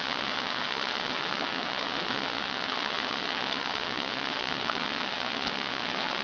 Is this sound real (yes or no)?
no